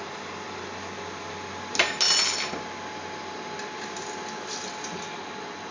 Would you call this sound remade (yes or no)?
no